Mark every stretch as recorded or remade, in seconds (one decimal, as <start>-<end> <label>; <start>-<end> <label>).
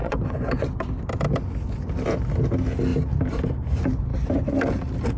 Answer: 0.0-0.7 remade; 0.7-5.2 recorded